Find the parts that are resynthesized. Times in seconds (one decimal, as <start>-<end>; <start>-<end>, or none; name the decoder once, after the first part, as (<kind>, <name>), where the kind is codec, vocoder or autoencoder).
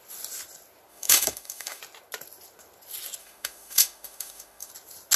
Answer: 0.9-1.8 (autoencoder, DAC-VAE); 3.2-4.7